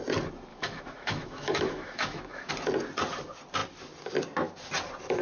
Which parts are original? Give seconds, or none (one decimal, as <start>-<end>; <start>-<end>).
0.0-0.5; 2.5-5.2